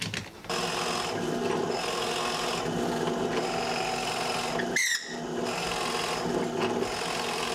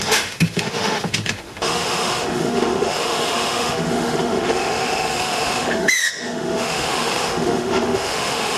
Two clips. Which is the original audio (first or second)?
first